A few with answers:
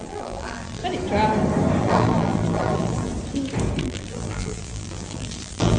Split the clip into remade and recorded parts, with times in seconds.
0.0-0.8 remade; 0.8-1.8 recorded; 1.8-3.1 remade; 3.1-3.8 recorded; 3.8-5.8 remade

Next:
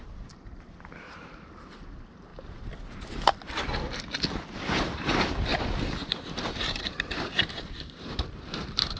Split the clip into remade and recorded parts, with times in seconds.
0.0-2.3 remade; 2.3-4.6 recorded; 4.6-5.5 remade; 5.5-6.1 recorded; 6.1-9.0 remade

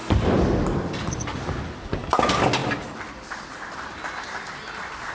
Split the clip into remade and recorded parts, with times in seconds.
0.0-2.6 recorded; 2.6-4.1 remade; 4.1-5.1 recorded

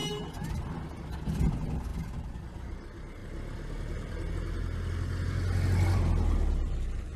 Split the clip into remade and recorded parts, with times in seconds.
0.0-0.5 remade; 0.5-1.9 recorded; 1.9-2.4 remade; 2.4-7.2 recorded

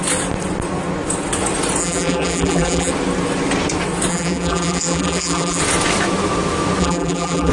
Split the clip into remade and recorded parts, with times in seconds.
0.0-1.8 recorded; 1.8-2.9 remade; 2.9-4.1 recorded; 4.1-5.6 remade; 5.6-6.8 recorded; 6.8-7.5 remade